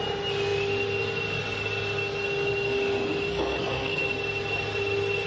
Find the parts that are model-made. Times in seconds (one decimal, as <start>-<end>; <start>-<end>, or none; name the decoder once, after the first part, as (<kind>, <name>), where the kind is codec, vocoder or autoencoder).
3.3-4.0 (codec, SNAC)